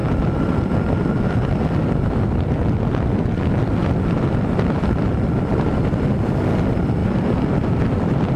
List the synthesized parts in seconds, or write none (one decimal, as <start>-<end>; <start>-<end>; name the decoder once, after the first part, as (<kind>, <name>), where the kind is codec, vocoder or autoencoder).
7.0-8.4 (vocoder, BigVGAN v2)